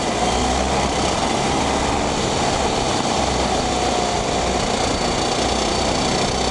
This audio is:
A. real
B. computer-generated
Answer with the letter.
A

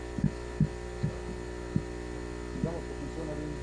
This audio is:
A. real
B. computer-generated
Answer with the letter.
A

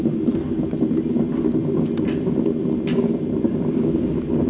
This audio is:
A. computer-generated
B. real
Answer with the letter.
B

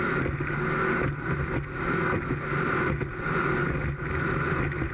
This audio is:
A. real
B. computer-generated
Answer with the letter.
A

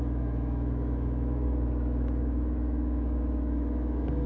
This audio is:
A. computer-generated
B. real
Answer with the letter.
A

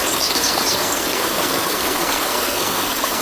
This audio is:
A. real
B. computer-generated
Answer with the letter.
B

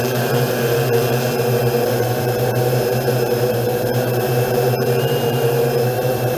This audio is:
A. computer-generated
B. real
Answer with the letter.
A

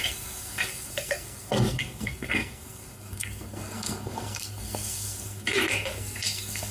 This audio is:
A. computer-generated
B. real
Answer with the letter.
A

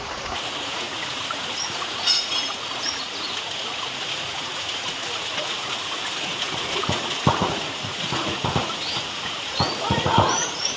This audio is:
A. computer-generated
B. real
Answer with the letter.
A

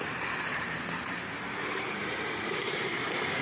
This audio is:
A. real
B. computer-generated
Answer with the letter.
B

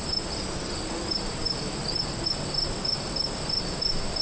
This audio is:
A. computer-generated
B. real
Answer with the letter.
B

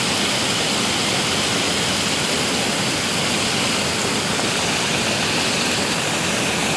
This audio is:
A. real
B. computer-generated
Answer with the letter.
A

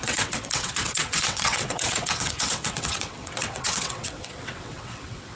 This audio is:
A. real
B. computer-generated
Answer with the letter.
B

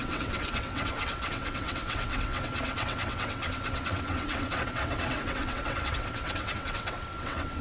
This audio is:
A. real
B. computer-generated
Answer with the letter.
B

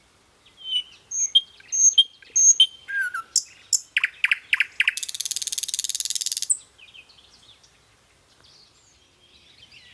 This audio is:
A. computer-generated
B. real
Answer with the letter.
B